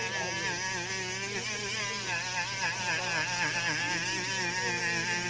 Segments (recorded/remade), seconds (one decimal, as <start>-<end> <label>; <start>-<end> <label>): 0.0-5.3 recorded